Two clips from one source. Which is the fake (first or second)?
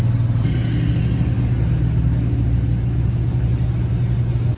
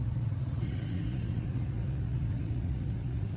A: second